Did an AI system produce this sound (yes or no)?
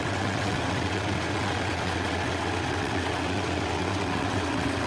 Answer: yes